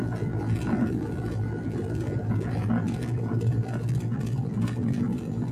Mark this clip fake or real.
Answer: fake